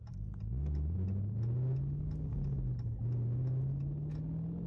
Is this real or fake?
real